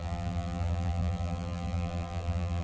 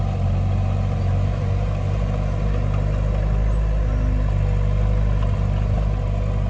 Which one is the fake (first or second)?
first